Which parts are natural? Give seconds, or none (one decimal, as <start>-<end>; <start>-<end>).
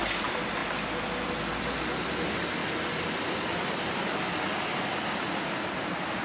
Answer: 0.0-6.2